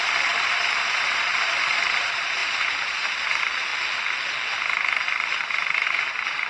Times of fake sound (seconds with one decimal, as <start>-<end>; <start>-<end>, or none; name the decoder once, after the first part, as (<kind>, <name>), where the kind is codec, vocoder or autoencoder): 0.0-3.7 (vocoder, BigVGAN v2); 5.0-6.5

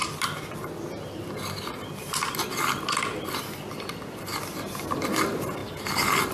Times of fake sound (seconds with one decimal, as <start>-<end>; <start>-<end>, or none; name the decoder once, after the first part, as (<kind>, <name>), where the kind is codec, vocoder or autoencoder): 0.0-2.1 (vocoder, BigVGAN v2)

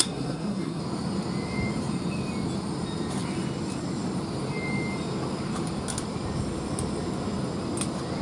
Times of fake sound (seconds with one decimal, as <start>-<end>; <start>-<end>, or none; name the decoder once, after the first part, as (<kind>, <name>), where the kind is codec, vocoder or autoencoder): 0.0-0.8 (codec, SNAC)

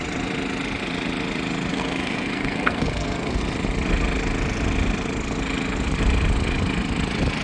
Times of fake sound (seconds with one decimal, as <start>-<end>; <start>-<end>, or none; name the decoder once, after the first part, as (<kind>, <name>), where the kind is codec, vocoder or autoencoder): 1.7-3.4 (codec, SNAC)